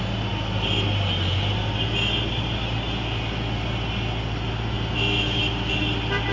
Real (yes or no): yes